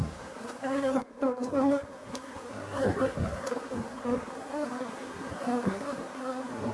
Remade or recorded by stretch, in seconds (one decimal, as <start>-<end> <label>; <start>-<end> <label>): 0.0-6.7 remade